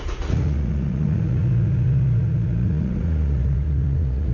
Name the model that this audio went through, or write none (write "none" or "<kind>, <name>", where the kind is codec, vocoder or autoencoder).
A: vocoder, Vocos